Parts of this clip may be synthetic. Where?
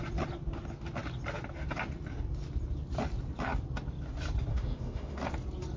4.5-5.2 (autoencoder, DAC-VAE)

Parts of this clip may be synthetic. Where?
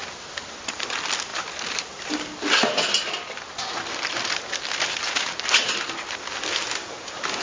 none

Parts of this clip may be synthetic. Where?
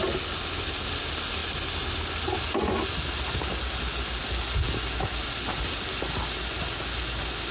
none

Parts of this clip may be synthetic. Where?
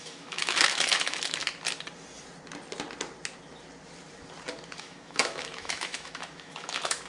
0.0-1.4 (autoencoder, DAC-VAE); 4.8-7.1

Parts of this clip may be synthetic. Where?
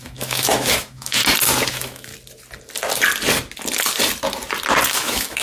0.0-1.2 (autoencoder, DAC-VAE); 1.7-2.1; 4.9-5.4